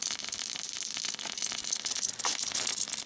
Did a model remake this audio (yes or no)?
no